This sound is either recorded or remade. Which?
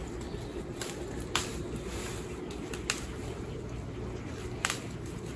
recorded